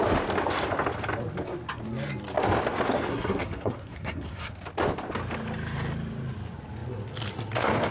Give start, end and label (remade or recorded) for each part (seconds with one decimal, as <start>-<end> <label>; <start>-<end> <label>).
0.0-3.1 recorded; 3.1-4.5 remade; 4.5-7.9 recorded